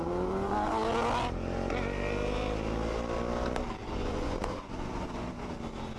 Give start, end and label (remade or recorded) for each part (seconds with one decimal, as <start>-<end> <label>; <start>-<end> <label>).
0.0-3.8 recorded; 3.8-5.6 remade; 5.6-6.0 recorded